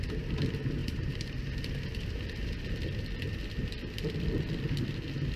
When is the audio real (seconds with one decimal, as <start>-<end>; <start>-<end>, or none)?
0.0-0.8; 1.4-5.4